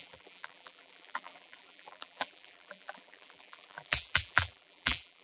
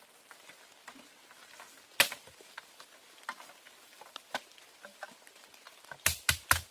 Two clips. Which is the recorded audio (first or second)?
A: second